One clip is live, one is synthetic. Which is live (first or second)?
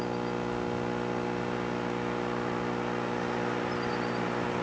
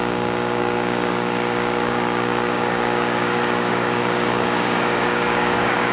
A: first